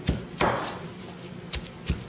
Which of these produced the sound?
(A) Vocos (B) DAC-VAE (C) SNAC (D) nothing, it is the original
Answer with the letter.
D